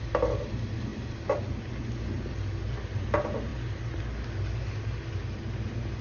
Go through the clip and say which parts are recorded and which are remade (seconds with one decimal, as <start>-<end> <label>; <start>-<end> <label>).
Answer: 0.0-6.0 recorded